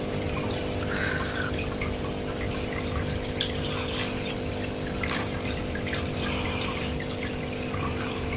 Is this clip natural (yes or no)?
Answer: yes